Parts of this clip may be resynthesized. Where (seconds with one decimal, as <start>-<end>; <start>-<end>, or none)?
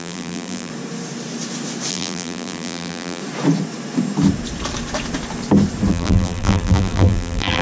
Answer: 0.0-0.7; 1.9-3.2; 5.9-7.6